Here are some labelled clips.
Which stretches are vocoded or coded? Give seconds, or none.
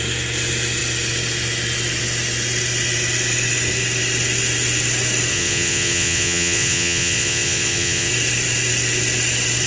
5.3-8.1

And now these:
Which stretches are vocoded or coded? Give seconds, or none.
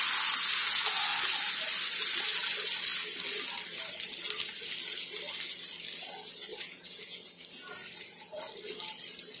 6.5-7.7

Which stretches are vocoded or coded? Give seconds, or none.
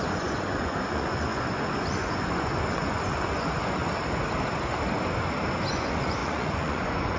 0.0-3.8; 5.7-7.2